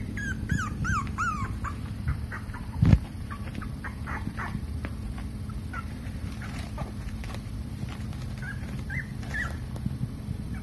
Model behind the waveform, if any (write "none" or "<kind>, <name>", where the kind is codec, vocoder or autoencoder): vocoder, BigVGAN v2